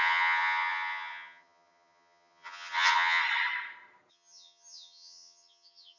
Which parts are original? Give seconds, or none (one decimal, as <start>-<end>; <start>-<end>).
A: 3.2-4.1